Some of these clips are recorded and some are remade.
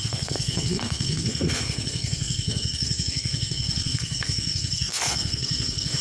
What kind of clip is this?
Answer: remade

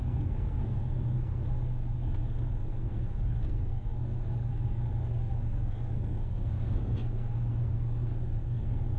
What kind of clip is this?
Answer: remade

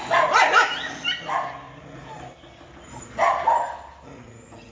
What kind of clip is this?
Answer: recorded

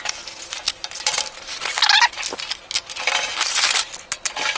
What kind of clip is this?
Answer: recorded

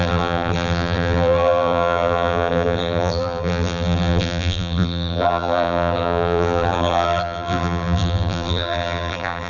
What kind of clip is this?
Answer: remade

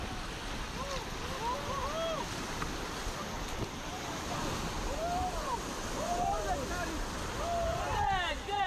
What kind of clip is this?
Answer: recorded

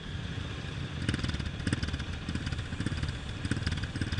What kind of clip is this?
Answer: recorded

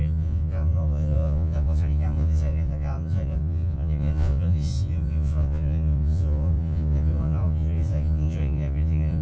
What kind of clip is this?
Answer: remade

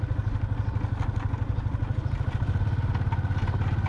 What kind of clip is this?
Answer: recorded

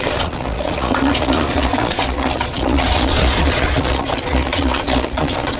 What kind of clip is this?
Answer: remade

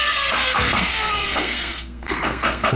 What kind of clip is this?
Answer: remade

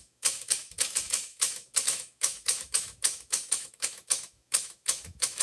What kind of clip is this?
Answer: remade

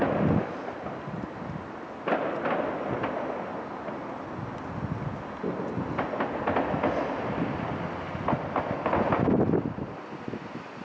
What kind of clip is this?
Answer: recorded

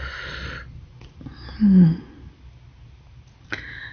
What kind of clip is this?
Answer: recorded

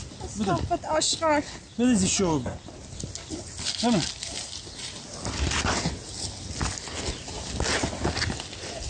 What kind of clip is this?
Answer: recorded